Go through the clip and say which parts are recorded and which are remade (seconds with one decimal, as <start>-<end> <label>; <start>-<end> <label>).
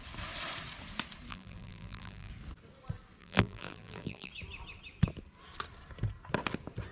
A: 0.0-1.3 recorded; 1.3-2.3 remade; 2.3-3.2 recorded; 3.2-4.3 remade; 4.3-6.9 recorded